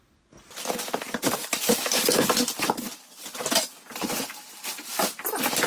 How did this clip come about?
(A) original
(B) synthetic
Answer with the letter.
A